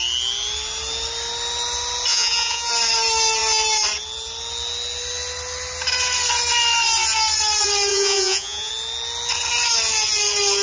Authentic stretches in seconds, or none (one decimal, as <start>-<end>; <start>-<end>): 0.0-2.1; 2.7-7.9; 8.7-10.6